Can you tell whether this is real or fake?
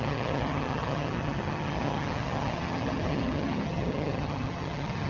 fake